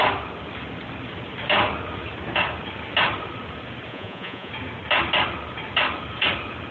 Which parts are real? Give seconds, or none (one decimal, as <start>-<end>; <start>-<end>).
0.0-3.9; 4.5-6.7